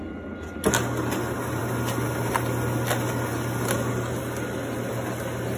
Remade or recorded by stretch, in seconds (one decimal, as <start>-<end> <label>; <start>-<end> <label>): 0.0-5.6 recorded